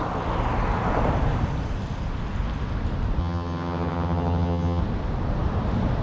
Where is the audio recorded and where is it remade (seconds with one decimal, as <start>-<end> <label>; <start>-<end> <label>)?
0.0-3.2 recorded; 3.2-4.8 remade; 4.8-6.0 recorded